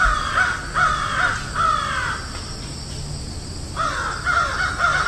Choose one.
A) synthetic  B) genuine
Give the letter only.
B